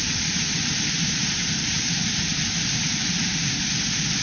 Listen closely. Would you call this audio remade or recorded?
remade